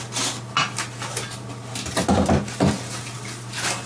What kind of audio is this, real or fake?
real